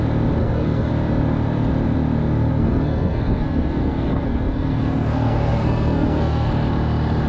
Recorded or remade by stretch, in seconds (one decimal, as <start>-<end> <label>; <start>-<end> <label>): 0.0-0.4 recorded; 0.4-0.9 remade; 0.9-2.5 recorded; 2.5-6.5 remade; 6.5-7.3 recorded

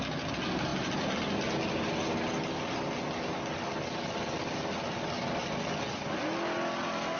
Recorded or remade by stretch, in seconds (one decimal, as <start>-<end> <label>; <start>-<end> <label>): 0.0-7.2 recorded

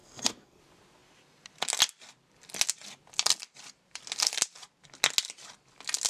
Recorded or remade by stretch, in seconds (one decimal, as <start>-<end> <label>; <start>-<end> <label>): 0.0-0.6 remade; 0.6-6.1 recorded

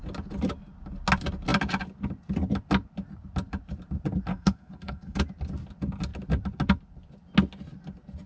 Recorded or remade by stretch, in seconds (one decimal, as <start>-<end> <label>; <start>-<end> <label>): 0.0-4.3 recorded; 4.3-5.2 remade; 5.2-8.3 recorded

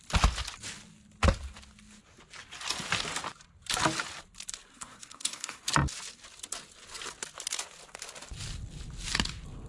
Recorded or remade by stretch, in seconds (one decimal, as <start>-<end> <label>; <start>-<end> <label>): 0.0-4.7 recorded; 4.7-5.6 remade; 5.6-9.7 recorded

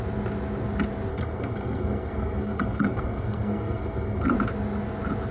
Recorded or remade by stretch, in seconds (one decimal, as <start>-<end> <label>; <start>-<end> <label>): 0.0-1.1 recorded; 1.1-4.3 remade; 4.3-5.3 recorded

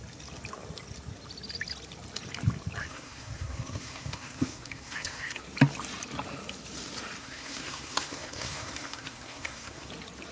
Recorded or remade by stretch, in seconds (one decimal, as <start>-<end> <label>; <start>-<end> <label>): 0.0-2.8 recorded; 2.8-5.4 remade; 5.4-7.2 recorded; 7.2-9.9 remade; 9.9-10.3 recorded